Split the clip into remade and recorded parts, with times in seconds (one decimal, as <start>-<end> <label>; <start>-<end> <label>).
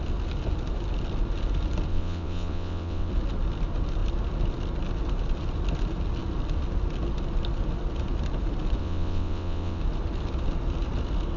0.0-1.9 recorded; 1.9-3.1 remade; 3.1-8.8 recorded; 8.8-9.8 remade; 9.8-11.4 recorded